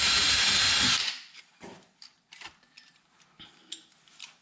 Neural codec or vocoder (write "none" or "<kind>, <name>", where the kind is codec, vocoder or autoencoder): vocoder, BigVGAN v2